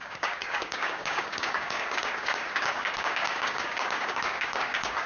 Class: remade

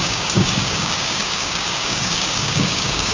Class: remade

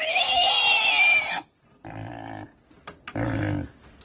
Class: recorded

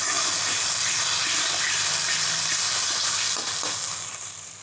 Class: recorded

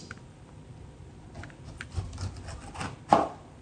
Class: recorded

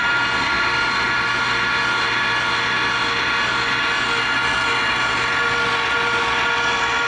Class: recorded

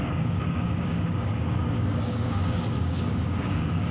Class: remade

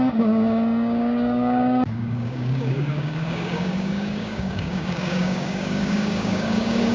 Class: remade